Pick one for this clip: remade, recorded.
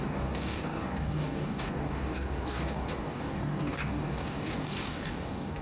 remade